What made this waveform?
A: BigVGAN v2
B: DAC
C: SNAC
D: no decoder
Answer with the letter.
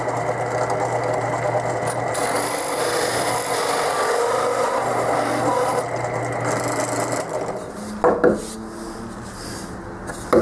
D